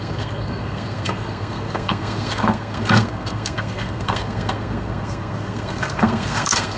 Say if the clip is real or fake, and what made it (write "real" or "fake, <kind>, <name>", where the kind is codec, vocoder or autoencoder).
fake, codec, SNAC